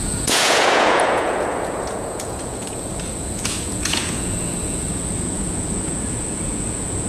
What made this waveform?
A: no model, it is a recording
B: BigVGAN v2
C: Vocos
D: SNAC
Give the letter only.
C